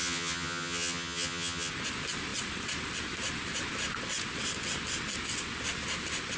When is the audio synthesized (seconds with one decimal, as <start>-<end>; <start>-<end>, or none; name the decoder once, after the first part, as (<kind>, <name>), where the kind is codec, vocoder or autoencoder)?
0.0-1.7 (vocoder, HiFi-GAN)